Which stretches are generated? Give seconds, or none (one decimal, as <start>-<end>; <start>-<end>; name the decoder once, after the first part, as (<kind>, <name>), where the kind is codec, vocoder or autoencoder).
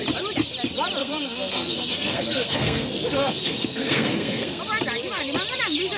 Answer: 1.0-4.6 (codec, SNAC)